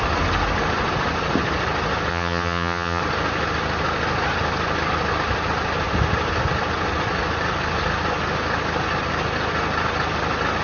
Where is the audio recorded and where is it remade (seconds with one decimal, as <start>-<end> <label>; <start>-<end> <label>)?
0.0-2.1 recorded; 2.1-3.0 remade; 3.0-10.6 recorded